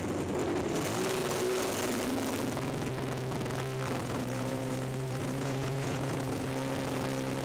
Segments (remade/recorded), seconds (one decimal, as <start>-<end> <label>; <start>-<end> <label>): 0.0-4.0 recorded; 4.0-6.5 remade; 6.5-7.4 recorded